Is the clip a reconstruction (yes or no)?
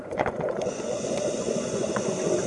yes